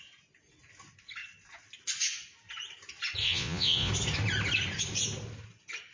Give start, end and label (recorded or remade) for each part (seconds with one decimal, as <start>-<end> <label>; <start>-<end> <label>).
0.0-3.2 recorded; 3.2-3.9 remade; 3.9-5.9 recorded